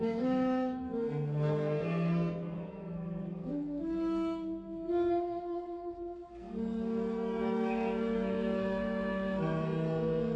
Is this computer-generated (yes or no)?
yes